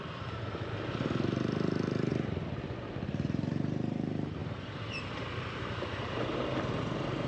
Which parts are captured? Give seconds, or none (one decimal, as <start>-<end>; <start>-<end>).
2.1-2.9